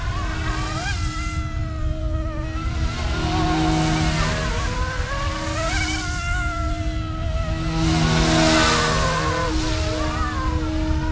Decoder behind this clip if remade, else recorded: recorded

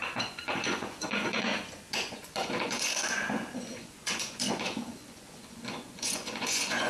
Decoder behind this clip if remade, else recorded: remade, vocoder, Vocos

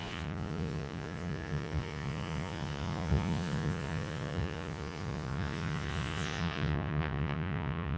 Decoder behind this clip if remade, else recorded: remade, vocoder, Vocos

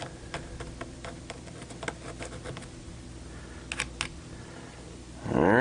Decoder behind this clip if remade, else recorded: recorded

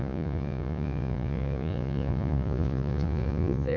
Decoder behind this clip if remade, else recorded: remade, vocoder, Vocos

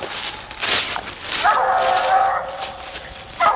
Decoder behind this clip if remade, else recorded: recorded